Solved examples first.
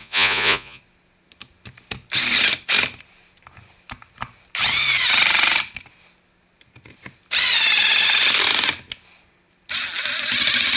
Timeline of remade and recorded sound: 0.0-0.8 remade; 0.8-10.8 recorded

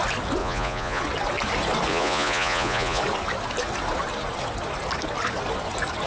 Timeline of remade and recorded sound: 0.0-0.4 recorded; 0.4-1.0 remade; 1.0-1.9 recorded; 1.9-3.0 remade; 3.0-6.1 recorded

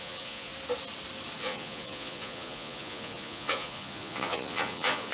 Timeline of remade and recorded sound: 0.0-0.5 remade; 0.5-1.4 recorded; 1.4-5.1 remade

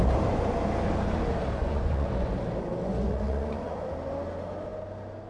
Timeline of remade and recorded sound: 0.0-1.6 recorded; 1.6-2.4 remade; 2.4-2.9 recorded; 2.9-3.8 remade; 3.8-5.3 recorded

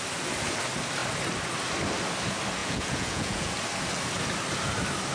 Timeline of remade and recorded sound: 0.0-2.6 recorded; 2.6-3.5 remade; 3.5-5.1 recorded